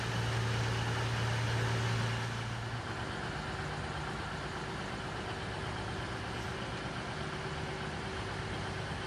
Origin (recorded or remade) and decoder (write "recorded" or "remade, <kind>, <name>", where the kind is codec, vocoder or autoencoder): recorded